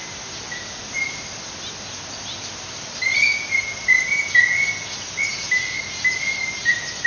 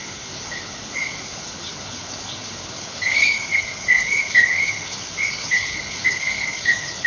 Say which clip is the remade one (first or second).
second